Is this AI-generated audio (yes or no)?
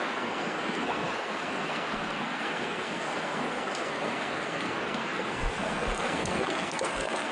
yes